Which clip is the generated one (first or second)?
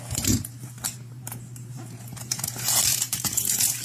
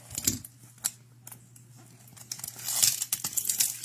first